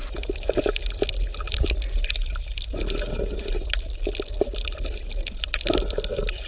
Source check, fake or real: real